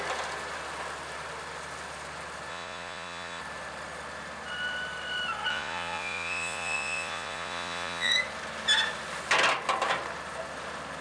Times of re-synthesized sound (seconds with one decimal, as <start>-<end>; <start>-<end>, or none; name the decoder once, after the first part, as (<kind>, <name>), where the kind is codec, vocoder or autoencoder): 2.5-3.4 (vocoder, Vocos); 5.5-8.1